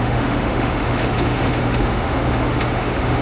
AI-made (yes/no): yes